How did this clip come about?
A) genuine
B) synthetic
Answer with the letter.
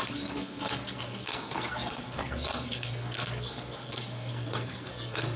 B